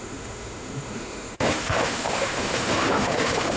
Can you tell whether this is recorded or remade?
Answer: remade